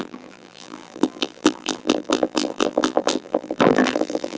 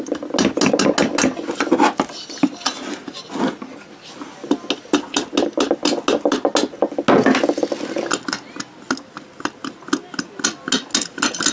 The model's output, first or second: first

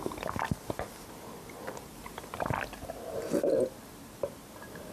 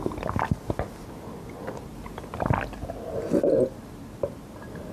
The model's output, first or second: first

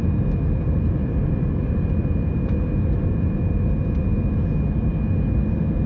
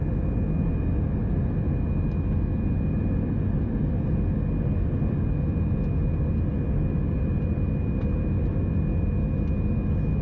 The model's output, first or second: first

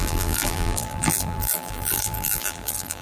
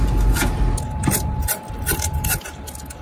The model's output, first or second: first